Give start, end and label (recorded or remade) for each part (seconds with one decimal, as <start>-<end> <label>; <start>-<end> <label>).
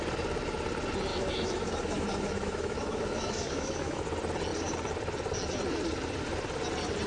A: 0.0-1.1 recorded; 1.1-4.0 remade; 4.0-7.1 recorded